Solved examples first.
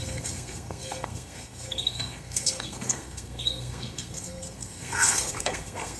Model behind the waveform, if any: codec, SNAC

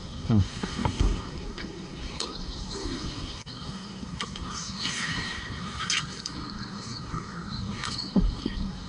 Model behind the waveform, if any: codec, SNAC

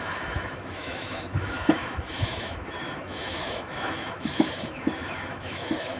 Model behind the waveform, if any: autoencoder, DAC-VAE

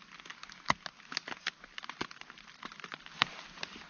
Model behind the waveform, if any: none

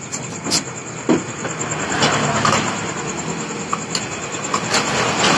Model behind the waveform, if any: none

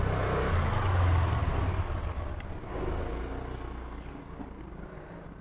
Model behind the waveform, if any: none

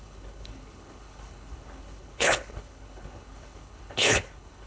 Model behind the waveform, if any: codec, HILCodec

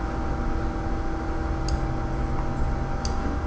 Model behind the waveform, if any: none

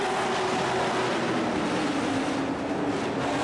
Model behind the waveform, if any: none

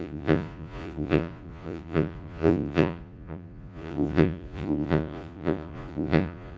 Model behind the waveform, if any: vocoder, Vocos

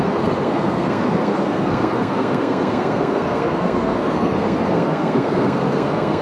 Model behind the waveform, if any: codec, SNAC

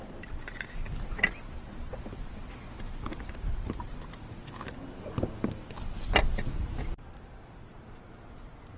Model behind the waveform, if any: none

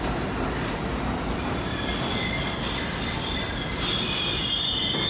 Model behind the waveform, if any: none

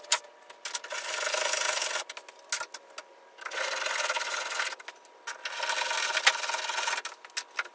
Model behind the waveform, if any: none